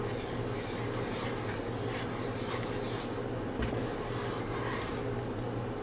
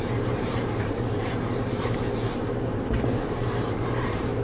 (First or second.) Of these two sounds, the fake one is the second